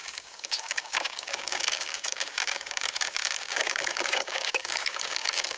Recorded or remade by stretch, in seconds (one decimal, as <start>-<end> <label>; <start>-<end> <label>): 0.0-5.6 remade